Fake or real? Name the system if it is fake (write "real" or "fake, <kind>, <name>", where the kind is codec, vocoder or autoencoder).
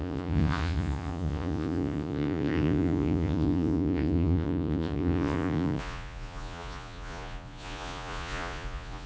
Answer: fake, vocoder, Vocos